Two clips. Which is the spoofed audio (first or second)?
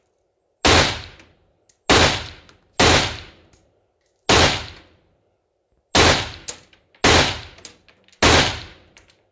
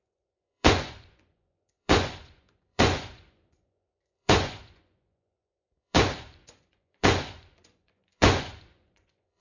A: second